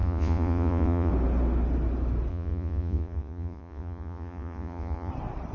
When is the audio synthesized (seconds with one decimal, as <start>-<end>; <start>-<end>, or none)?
0.0-1.1; 2.3-5.1